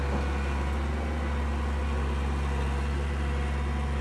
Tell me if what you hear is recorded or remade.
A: recorded